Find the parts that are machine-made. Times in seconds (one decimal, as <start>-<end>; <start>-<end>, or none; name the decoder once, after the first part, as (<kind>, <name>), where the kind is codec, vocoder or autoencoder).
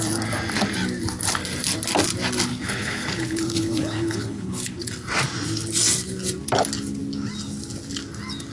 2.5-4.8 (codec, HILCodec)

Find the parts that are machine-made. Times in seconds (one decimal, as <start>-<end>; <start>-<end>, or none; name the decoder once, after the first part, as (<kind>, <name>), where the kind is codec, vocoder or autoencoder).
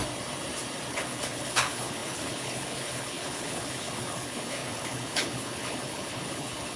0.9-6.8 (codec, HILCodec)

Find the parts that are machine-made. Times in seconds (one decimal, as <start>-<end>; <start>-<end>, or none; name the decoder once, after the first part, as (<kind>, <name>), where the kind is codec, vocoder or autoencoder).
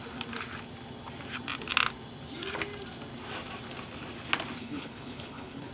4.6-5.7 (codec, HILCodec)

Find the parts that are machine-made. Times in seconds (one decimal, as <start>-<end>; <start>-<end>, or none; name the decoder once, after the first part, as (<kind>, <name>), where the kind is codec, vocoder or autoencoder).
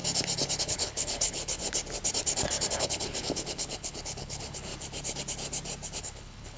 0.6-1.6 (codec, HILCodec); 2.7-4.7; 6.0-6.6